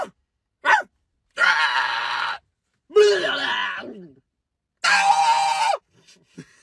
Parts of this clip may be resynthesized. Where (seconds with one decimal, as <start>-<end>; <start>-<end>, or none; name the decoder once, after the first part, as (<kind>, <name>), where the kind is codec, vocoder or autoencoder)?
none